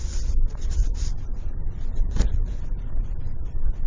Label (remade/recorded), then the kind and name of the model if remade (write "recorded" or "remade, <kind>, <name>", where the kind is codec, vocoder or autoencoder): remade, vocoder, Vocos